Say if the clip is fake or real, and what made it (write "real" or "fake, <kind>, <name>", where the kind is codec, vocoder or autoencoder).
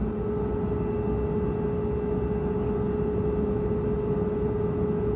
real